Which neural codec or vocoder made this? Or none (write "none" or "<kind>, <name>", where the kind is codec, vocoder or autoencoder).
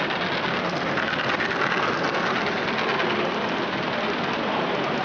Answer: none